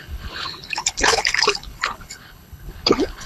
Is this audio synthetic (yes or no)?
yes